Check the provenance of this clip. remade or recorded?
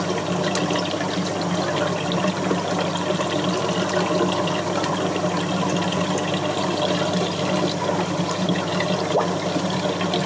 recorded